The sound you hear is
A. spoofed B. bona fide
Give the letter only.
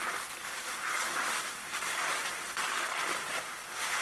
A